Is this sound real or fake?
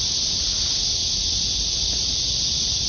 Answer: real